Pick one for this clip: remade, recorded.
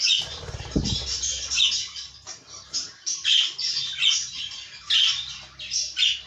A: recorded